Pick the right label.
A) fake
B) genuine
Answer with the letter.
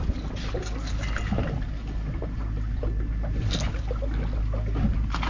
B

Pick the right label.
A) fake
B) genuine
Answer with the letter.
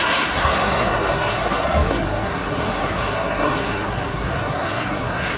A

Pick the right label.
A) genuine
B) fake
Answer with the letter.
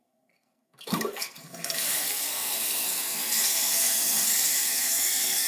B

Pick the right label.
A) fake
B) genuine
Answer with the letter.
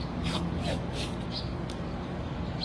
A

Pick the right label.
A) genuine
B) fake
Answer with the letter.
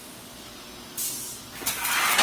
A